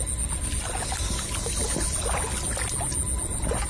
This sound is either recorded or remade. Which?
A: recorded